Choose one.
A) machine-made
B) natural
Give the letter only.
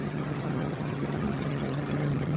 A